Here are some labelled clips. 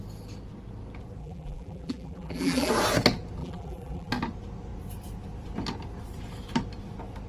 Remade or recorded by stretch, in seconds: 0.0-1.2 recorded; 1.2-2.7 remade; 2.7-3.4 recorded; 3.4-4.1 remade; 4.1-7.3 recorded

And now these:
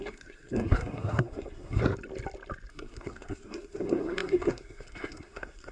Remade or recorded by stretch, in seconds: 0.0-1.8 remade; 1.8-2.7 recorded; 2.7-5.7 remade

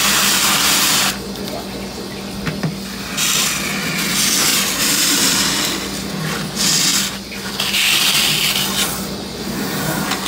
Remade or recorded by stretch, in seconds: 0.0-4.5 recorded; 4.5-5.7 remade; 5.7-10.3 recorded

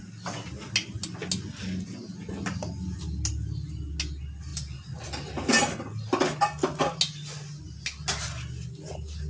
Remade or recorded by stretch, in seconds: 0.0-9.3 recorded

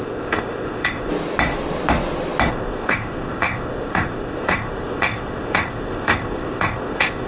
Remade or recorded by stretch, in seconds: 0.0-1.1 remade; 1.1-2.5 recorded; 2.5-7.3 remade